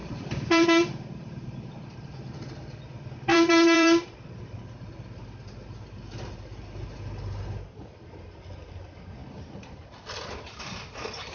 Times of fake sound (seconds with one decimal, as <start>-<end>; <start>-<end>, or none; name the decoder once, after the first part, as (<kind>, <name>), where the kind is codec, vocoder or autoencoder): 0.0-1.7 (vocoder, BigVGAN v2); 3.3-4.6; 9.2-10.5